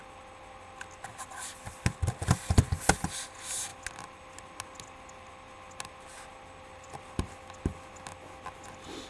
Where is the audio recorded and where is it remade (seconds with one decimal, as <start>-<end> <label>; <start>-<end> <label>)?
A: 0.0-9.1 recorded

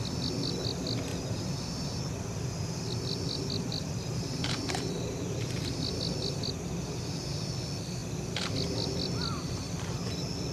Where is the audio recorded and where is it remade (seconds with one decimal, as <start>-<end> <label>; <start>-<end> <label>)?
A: 0.0-1.1 recorded; 1.1-6.0 remade; 6.0-10.5 recorded

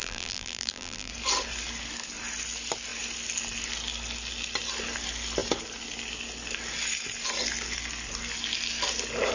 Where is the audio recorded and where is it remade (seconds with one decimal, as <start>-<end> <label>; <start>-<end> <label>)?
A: 0.0-1.1 remade; 1.1-9.3 recorded

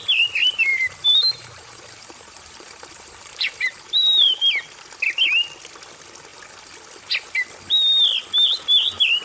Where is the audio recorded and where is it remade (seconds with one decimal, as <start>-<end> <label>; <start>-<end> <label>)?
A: 0.0-0.7 recorded; 0.7-4.4 remade; 4.4-9.2 recorded